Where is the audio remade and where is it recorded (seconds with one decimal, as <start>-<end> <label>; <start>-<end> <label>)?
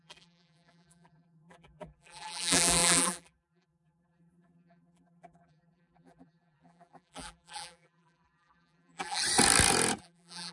0.0-9.2 remade; 9.2-10.0 recorded; 10.0-10.5 remade